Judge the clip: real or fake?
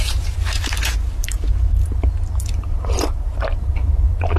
fake